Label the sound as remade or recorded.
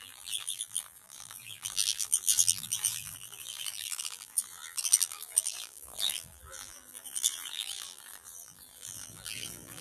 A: remade